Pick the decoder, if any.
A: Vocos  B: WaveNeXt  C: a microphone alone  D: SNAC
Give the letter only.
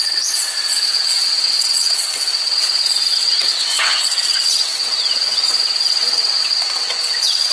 B